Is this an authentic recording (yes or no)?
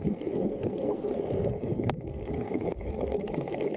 no